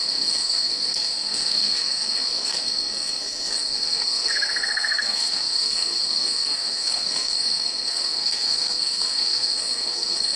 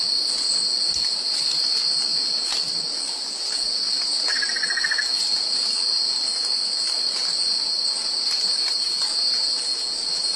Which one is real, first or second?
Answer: second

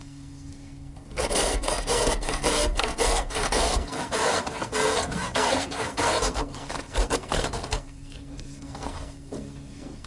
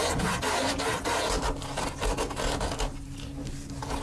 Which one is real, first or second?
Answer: second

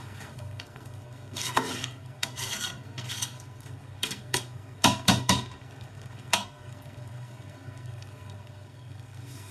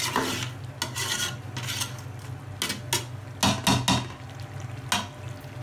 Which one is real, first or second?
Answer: second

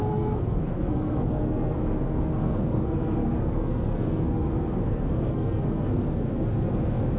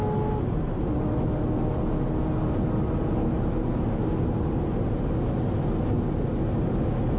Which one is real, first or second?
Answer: second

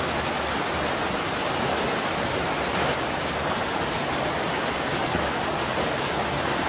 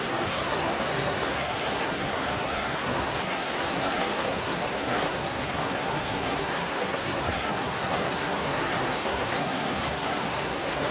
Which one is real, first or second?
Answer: first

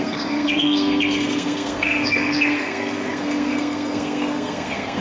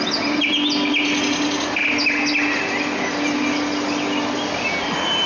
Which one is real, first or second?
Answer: second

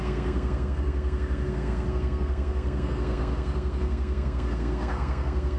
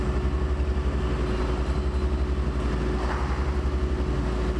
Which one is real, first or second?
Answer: second